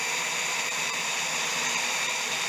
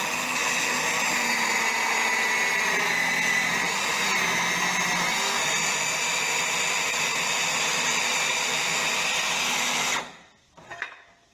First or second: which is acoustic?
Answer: second